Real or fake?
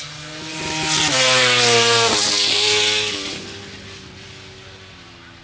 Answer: real